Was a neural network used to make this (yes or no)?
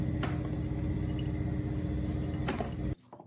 no